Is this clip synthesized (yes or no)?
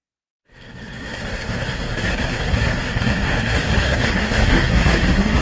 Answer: yes